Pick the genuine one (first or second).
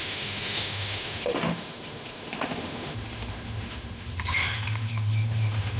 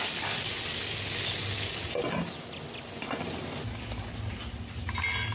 second